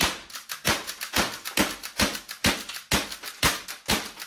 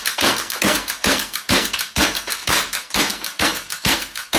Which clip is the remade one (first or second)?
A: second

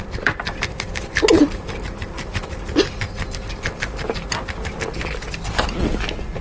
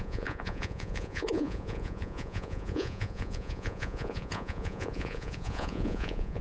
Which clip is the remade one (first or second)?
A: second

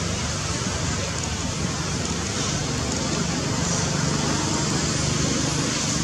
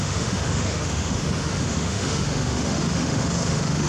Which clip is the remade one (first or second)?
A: second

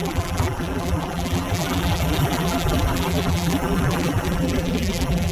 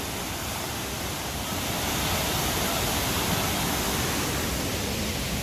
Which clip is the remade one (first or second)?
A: first